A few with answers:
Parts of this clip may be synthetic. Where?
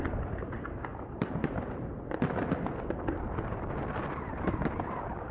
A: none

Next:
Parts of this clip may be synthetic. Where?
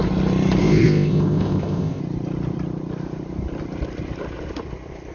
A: 0.6-2.0 (codec, ZipCodec)